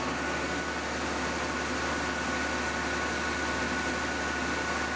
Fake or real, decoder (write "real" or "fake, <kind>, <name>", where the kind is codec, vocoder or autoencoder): real